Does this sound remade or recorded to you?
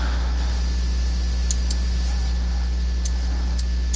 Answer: recorded